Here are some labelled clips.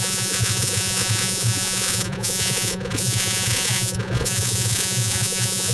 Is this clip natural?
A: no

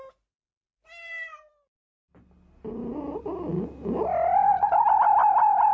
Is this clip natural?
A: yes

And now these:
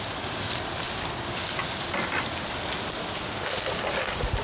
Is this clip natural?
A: yes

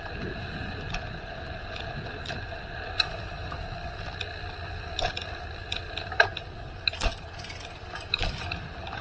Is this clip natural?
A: yes